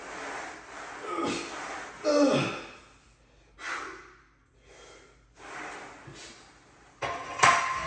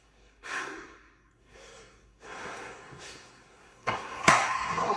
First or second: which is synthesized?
second